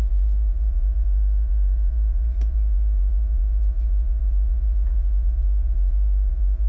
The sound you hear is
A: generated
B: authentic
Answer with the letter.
A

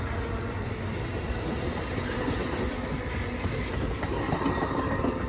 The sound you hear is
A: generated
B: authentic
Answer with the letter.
B